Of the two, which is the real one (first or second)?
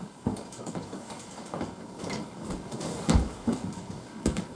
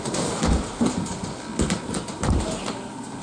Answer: second